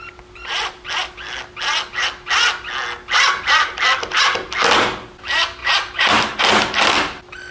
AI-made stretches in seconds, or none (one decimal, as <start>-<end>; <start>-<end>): 5.6-6.4